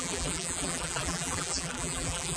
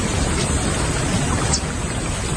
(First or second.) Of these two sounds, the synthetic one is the first